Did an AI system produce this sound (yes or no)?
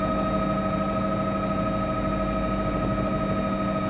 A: no